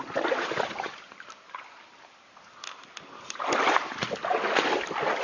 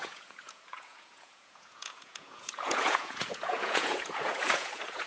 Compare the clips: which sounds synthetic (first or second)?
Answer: second